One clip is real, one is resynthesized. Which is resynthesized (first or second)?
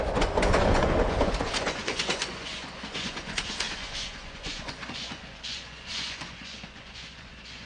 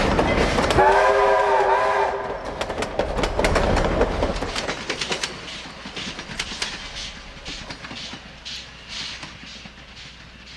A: first